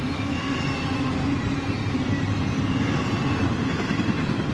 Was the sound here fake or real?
real